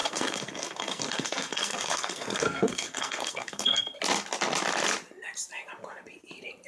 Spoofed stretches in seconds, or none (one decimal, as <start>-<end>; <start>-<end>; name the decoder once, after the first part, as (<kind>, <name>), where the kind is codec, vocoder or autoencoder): 0.0-4.0 (codec, SNAC)